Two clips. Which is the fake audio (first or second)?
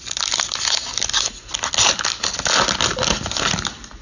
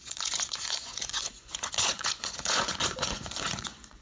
second